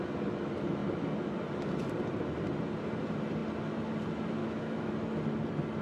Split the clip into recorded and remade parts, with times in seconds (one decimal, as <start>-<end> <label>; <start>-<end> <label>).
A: 0.0-4.4 recorded; 4.4-4.9 remade; 4.9-5.8 recorded